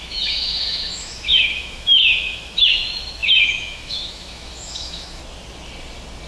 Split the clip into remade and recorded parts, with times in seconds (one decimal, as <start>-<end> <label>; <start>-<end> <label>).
0.0-5.2 remade; 5.2-6.3 recorded

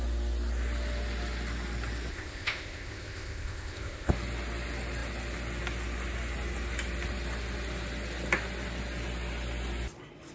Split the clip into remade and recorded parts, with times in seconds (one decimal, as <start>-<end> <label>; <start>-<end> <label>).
0.0-2.1 recorded; 2.1-4.1 remade; 4.1-10.3 recorded

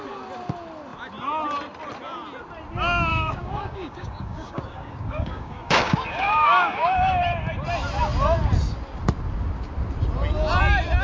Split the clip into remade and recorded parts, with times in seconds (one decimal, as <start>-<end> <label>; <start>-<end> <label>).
0.0-3.1 recorded; 3.1-7.2 remade; 7.2-11.0 recorded

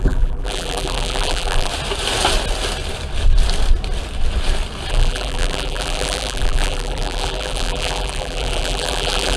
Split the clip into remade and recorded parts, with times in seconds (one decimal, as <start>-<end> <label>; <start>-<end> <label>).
0.0-1.7 remade; 1.7-4.9 recorded; 4.9-9.4 remade

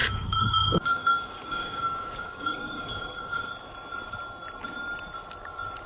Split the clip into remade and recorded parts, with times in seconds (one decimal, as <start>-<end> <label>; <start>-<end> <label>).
0.0-3.5 remade; 3.5-5.9 recorded

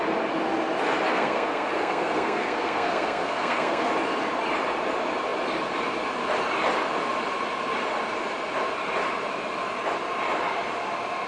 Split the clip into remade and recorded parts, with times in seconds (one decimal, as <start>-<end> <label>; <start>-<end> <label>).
0.0-1.1 recorded; 1.1-3.9 remade; 3.9-11.3 recorded

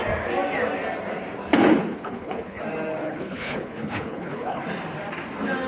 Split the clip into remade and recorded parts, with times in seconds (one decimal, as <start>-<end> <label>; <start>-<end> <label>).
0.0-1.8 recorded; 1.8-2.6 remade; 2.6-3.0 recorded; 3.0-4.6 remade; 4.6-5.7 recorded

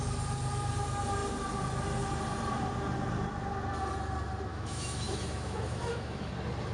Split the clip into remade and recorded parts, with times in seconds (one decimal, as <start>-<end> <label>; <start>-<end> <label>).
0.0-4.5 recorded; 4.5-6.3 remade; 6.3-6.7 recorded